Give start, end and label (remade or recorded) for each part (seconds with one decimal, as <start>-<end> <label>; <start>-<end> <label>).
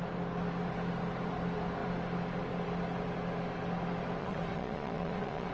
0.0-4.2 recorded; 4.2-5.5 remade